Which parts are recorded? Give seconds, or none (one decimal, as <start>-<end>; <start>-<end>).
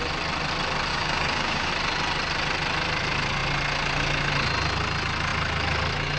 0.0-0.9; 1.7-6.2